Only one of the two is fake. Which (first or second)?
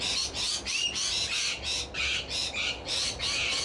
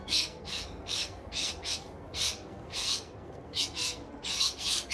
second